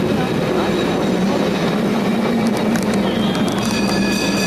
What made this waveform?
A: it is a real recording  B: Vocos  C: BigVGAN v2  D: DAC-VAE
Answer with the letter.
A